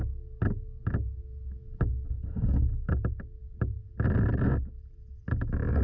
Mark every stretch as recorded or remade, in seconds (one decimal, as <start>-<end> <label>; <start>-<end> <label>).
0.0-5.8 recorded